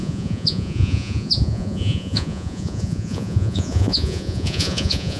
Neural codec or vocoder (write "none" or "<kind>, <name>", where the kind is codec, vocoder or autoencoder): vocoder, Vocos